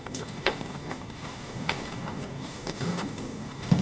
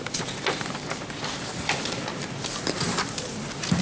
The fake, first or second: first